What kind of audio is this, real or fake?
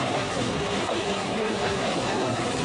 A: fake